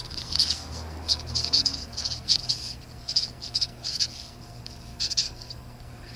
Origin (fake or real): fake